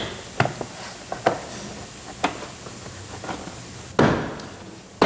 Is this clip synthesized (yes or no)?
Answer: no